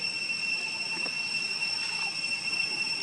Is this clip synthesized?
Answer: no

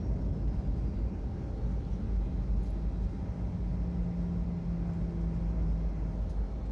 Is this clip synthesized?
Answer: no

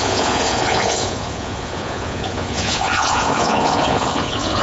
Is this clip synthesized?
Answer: yes